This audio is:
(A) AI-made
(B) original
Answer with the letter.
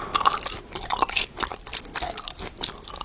B